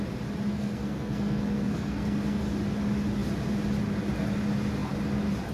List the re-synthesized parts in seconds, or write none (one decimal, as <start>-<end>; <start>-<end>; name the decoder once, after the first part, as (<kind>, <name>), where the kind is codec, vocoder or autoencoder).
0.5-2.4 (codec, SNAC)